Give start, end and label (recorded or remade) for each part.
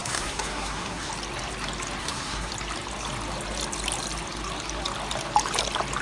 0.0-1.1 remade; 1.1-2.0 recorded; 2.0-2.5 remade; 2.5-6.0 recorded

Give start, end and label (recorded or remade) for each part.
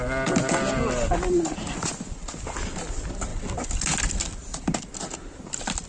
0.0-5.9 recorded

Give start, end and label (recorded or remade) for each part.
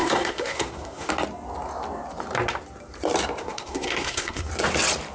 0.0-1.1 remade; 1.1-3.4 recorded; 3.4-4.5 remade; 4.5-5.1 recorded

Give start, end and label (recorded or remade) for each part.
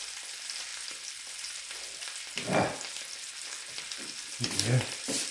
0.0-5.3 recorded